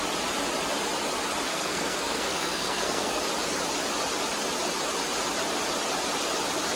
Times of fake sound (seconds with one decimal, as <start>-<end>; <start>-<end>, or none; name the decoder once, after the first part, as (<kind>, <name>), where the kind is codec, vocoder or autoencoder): 1.5-3.2 (codec, SNAC)